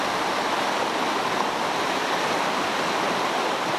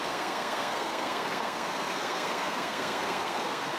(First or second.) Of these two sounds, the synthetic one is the second